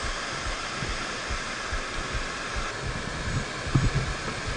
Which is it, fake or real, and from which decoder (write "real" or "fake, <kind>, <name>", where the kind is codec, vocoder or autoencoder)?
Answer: real